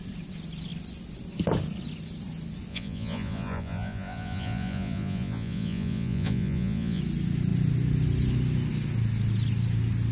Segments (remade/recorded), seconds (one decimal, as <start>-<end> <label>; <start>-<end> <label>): 0.0-2.7 recorded; 2.7-7.0 remade; 7.0-10.1 recorded